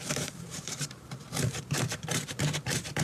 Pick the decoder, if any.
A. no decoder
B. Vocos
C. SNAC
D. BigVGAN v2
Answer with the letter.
D